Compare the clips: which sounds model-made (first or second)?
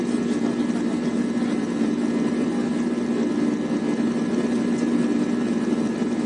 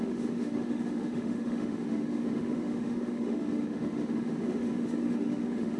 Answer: second